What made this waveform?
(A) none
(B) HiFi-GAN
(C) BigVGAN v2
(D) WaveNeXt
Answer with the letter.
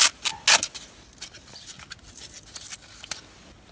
A